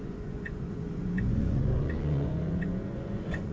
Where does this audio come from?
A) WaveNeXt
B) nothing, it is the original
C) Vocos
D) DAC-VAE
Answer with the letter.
C